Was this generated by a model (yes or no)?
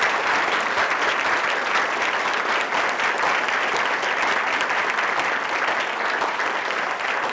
no